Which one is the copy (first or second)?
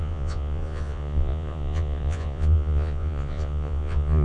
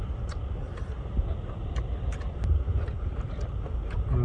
first